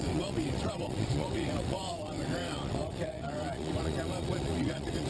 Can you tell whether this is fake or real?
fake